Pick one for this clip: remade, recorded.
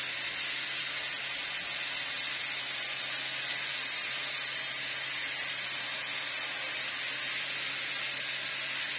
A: recorded